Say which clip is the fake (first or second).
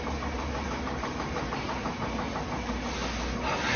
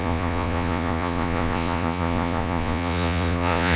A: second